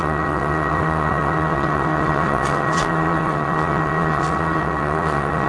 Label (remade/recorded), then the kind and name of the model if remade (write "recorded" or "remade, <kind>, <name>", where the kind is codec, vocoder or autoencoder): remade, vocoder, WaveNeXt